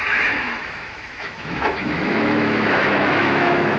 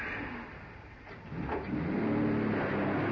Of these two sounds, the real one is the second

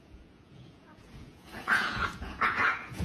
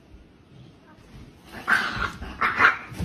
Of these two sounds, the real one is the second